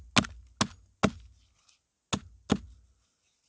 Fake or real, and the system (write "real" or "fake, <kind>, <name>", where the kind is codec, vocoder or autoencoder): real